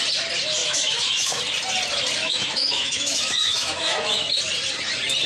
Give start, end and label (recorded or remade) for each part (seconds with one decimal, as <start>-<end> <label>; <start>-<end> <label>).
0.0-0.6 recorded; 0.6-1.4 remade; 1.4-2.2 recorded; 2.2-4.4 remade; 4.4-5.3 recorded